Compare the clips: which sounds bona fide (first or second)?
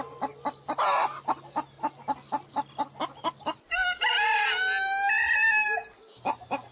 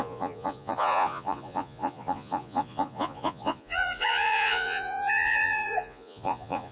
first